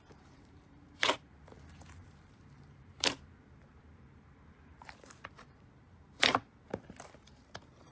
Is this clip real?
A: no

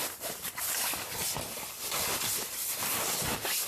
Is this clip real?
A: no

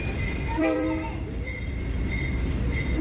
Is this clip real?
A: no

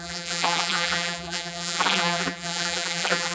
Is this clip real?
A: no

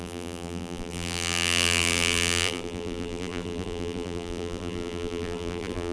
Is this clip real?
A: no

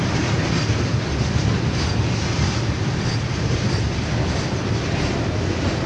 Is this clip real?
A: yes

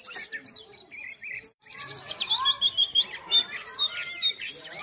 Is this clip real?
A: no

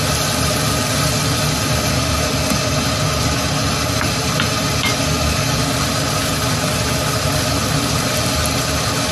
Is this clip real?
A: yes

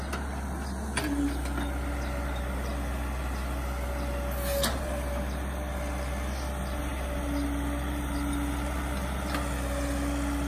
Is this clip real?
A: yes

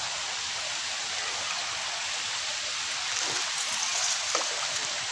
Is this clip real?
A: yes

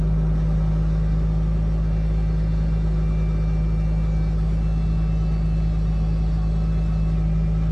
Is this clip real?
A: yes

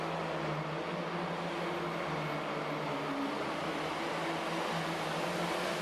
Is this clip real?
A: yes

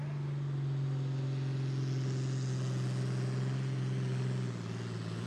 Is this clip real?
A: yes